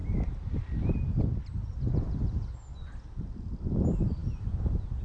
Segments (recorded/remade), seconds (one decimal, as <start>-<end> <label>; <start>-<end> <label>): 0.0-5.0 recorded